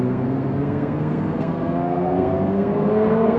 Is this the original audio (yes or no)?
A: no